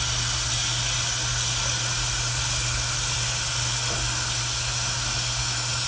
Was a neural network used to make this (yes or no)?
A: no